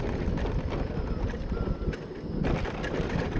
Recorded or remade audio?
recorded